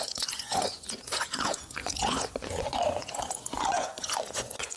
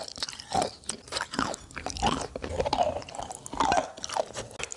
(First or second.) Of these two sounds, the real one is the second